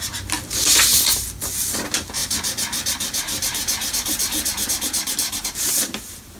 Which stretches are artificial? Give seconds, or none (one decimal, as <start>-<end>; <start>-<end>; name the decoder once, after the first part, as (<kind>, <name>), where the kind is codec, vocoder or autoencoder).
2.2-6.0 (vocoder, BigVGAN v2)